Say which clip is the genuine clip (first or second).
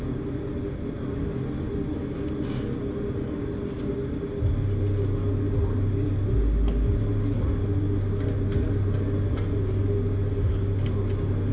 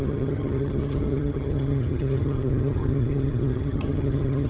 first